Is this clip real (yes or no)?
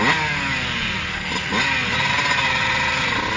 yes